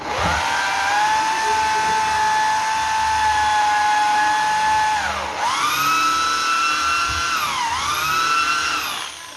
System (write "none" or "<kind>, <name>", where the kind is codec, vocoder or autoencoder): none